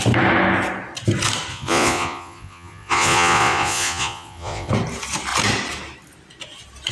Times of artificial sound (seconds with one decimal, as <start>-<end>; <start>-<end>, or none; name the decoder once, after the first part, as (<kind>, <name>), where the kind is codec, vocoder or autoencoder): 1.5-4.7 (vocoder, Vocos)